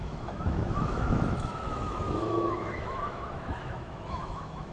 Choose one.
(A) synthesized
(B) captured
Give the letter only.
A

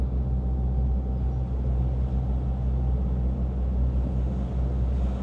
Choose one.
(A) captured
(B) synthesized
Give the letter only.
A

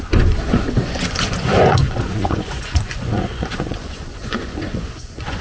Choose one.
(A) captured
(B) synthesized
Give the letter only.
B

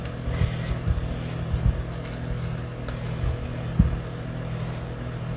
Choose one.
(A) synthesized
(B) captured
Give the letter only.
B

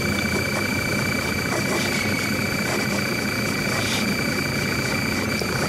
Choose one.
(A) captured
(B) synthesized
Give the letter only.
A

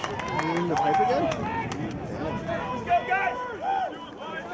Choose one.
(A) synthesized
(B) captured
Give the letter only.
B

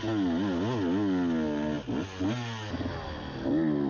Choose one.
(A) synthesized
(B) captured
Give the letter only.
B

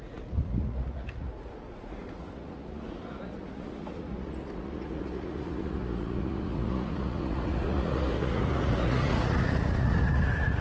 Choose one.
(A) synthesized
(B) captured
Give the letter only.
A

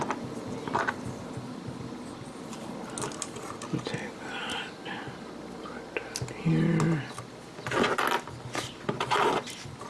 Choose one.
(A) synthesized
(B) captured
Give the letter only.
B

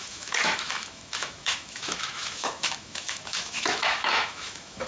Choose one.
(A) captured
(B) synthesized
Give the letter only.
B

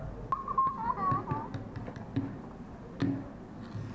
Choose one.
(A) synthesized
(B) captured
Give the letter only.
B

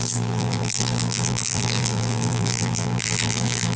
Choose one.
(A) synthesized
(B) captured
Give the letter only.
A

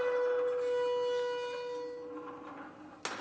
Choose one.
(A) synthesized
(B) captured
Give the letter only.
B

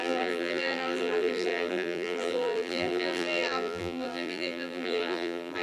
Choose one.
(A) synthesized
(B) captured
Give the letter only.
A